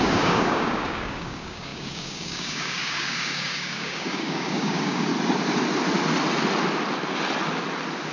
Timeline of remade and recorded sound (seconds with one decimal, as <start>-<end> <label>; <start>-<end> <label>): 0.0-5.1 remade; 5.1-8.1 recorded